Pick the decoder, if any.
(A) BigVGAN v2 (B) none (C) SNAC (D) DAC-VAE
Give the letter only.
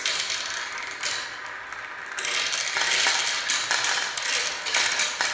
B